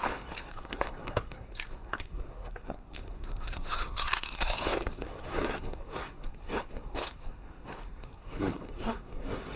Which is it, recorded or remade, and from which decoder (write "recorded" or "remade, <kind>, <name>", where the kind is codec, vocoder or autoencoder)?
remade, codec, SNAC